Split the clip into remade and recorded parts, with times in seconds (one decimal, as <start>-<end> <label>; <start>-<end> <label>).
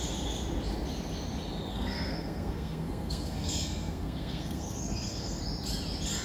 0.0-1.7 recorded; 1.7-5.4 remade; 5.4-6.2 recorded